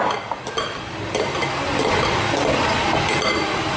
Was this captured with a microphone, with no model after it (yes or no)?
yes